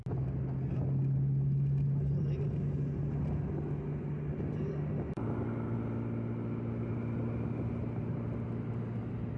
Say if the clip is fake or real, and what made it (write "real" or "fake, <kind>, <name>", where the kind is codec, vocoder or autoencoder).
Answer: real